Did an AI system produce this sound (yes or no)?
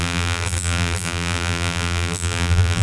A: yes